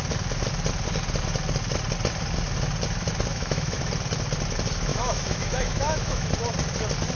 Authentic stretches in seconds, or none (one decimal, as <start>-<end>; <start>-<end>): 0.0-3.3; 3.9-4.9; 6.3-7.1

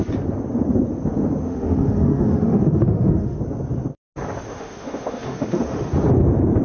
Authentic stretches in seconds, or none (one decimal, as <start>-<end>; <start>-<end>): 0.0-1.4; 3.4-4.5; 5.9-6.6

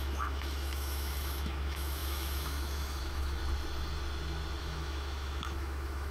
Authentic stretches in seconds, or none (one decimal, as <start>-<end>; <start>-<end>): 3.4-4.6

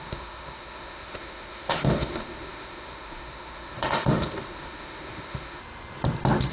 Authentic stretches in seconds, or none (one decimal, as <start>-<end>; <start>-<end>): 5.6-6.5